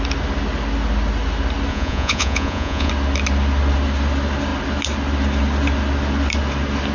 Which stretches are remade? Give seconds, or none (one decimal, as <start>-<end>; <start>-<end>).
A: 1.7-2.9